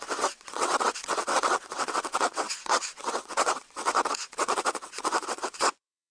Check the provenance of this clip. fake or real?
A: fake